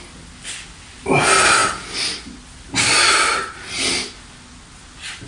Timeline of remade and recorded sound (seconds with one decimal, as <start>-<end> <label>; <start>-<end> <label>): 0.0-5.3 recorded

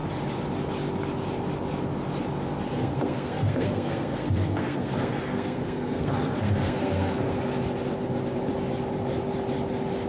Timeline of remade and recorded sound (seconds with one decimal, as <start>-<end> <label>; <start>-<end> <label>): 0.0-2.8 recorded; 2.8-7.4 remade; 7.4-10.1 recorded

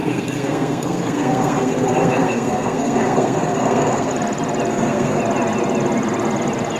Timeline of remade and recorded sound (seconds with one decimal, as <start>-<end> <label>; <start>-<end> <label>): 0.0-4.1 remade; 4.1-4.7 recorded; 4.7-5.2 remade; 5.2-6.8 recorded

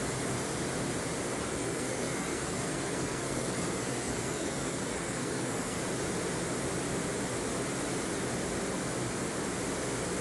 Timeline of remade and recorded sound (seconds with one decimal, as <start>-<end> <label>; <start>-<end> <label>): 0.0-1.4 recorded; 1.4-5.8 remade; 5.8-10.2 recorded

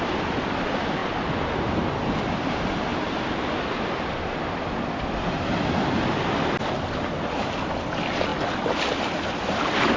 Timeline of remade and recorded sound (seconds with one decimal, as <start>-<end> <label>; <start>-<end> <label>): 0.0-10.0 recorded

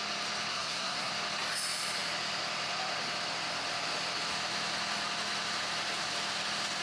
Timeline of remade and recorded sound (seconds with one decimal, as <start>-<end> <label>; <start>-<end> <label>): 0.0-0.5 recorded; 0.5-1.1 remade; 1.1-6.8 recorded